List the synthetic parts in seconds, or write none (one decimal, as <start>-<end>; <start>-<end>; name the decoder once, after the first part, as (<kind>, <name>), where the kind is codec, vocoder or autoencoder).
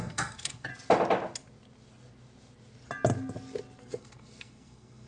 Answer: 0.0-0.7 (codec, SNAC); 3.8-5.1